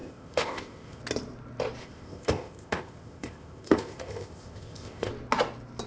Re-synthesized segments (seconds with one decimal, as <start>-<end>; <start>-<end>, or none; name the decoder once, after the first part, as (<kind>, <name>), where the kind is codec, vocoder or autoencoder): 0.0-1.0 (codec, ZipCodec); 1.8-5.1